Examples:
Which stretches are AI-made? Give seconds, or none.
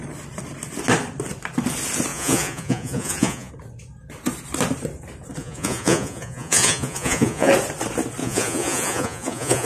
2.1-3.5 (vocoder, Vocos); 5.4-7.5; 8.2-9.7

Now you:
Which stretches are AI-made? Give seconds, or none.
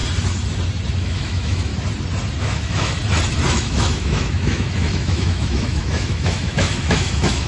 1.0-1.7 (autoencoder, DAC-VAE); 2.4-3.0; 3.5-7.5